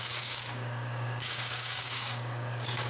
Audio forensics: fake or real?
fake